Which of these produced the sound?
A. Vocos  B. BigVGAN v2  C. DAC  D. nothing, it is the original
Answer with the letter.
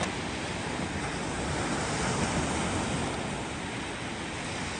D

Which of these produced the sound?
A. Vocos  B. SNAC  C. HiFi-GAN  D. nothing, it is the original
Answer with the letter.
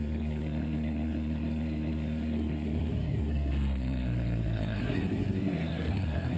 B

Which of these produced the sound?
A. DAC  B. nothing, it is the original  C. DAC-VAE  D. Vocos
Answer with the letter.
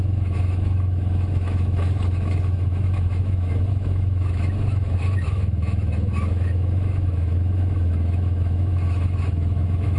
C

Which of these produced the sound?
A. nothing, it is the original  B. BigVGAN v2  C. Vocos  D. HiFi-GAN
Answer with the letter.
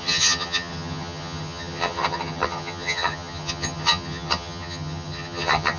D